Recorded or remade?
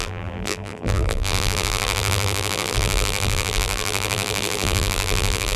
remade